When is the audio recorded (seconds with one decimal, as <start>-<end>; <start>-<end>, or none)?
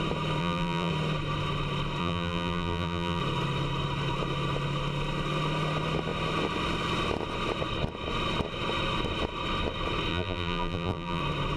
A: 0.0-0.4; 0.9-2.0; 3.2-10.1; 11.2-11.6